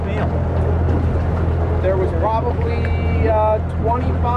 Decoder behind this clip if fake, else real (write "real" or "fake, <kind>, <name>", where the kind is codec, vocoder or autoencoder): real